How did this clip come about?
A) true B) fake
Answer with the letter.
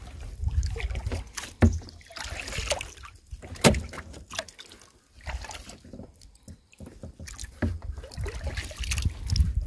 A